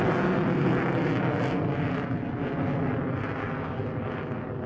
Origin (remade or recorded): recorded